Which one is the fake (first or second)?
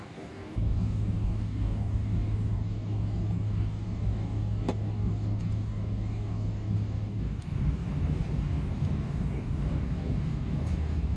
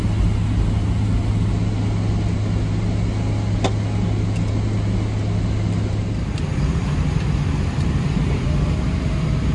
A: first